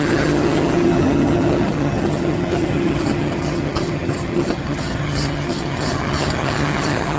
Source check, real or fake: fake